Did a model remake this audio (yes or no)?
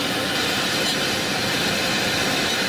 yes